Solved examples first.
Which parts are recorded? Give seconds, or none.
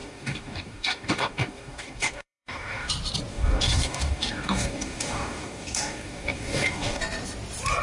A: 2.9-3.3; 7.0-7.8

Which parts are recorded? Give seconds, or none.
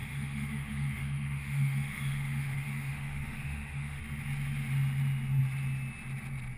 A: 4.0-6.6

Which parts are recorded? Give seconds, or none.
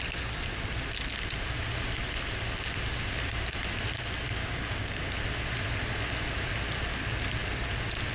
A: 0.0-4.4; 5.1-8.1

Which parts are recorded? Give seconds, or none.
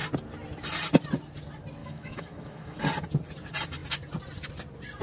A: 0.0-1.8; 2.8-5.0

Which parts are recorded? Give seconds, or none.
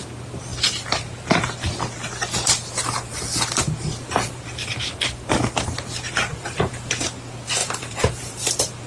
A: 0.0-6.3; 6.9-7.6; 8.5-8.9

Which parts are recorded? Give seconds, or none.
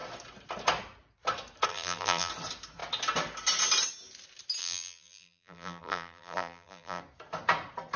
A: 0.0-1.7; 2.3-4.6; 7.0-8.0